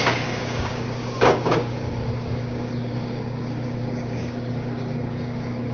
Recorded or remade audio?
remade